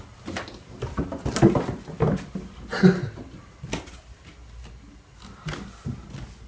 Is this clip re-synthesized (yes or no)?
no